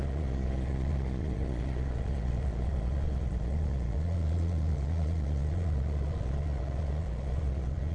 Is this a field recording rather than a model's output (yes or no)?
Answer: no